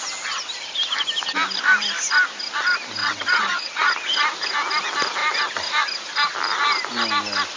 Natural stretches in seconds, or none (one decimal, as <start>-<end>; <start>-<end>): 0.0-3.0; 3.9-7.6